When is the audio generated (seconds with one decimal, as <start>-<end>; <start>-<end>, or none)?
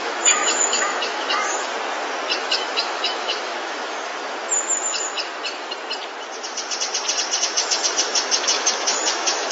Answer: 0.0-1.7; 2.4-4.1; 7.4-9.5